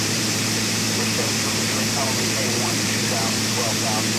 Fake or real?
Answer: fake